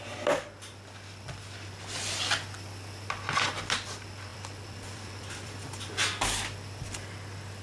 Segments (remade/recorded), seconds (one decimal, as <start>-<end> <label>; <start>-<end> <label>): 0.0-4.3 recorded; 4.3-5.9 remade; 5.9-7.6 recorded